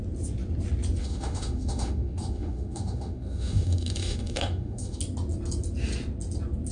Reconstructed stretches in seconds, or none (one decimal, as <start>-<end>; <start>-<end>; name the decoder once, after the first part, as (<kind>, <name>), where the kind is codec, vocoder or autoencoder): 1.0-5.0 (autoencoder, DAC-VAE)